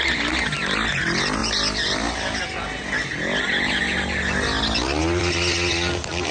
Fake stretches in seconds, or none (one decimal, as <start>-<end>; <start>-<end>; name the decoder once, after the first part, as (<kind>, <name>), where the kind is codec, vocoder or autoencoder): none